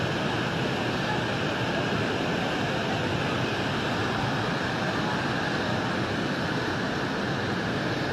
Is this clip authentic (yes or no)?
yes